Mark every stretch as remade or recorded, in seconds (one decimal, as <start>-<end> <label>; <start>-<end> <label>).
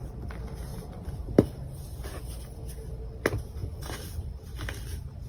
0.0-0.7 recorded; 0.7-2.0 remade; 2.0-3.6 recorded; 3.6-4.4 remade; 4.4-5.3 recorded